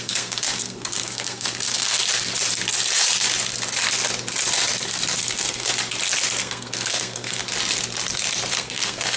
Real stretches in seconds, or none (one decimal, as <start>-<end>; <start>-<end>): 2.0-5.2; 5.7-6.4; 7.4-8.5